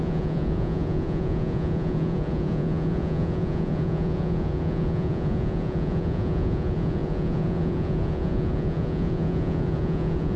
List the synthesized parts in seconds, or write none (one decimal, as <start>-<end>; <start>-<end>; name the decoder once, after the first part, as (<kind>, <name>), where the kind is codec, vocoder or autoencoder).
0.0-10.4 (vocoder, Vocos)

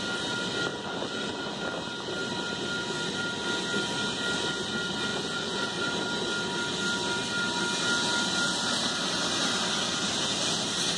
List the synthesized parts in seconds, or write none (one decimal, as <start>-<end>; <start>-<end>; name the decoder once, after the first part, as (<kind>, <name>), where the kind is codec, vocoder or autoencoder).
0.7-1.6 (vocoder, Vocos); 5.1-5.9